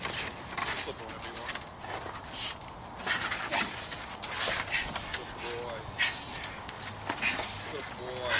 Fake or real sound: real